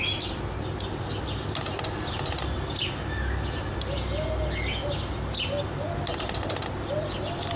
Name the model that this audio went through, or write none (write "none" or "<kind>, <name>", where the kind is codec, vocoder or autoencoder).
none